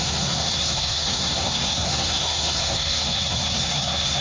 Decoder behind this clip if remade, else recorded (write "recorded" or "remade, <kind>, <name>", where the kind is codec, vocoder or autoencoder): remade, codec, SNAC